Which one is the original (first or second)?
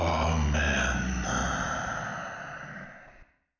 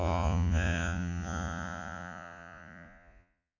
first